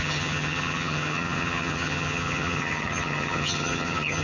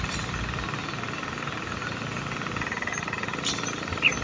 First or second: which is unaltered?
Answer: second